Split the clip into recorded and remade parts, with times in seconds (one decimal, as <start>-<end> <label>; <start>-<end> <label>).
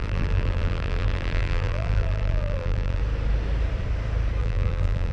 0.0-3.0 remade; 3.0-4.4 recorded; 4.4-5.1 remade